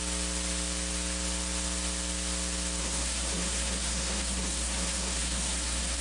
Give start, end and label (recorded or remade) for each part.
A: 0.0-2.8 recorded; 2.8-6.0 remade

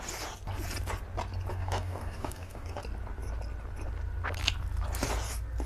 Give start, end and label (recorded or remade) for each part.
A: 0.0-1.5 recorded; 1.5-2.8 remade; 2.8-5.7 recorded